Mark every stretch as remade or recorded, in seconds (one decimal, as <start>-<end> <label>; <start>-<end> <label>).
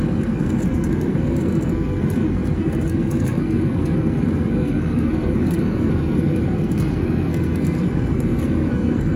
0.0-9.2 remade